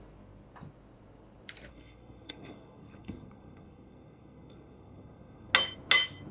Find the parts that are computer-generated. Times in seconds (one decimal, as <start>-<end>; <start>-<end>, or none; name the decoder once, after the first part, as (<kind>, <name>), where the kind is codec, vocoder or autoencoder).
1.7-5.5 (codec, SNAC)